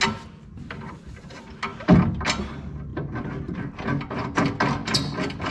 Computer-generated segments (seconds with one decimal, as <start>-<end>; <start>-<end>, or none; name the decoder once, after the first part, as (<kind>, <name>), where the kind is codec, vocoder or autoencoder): none